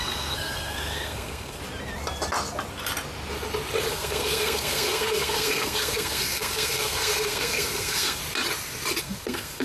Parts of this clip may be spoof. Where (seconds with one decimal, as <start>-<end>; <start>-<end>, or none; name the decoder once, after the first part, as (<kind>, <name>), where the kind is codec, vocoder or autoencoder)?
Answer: 0.0-1.6 (codec, SNAC); 3.9-8.2; 9.0-9.6